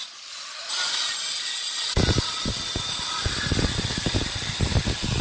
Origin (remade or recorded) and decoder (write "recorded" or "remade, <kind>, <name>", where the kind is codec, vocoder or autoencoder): recorded